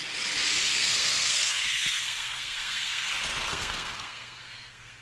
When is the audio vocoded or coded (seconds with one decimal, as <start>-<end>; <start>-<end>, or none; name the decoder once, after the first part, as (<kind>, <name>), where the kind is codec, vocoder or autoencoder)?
0.7-3.1 (codec, SNAC); 3.5-5.0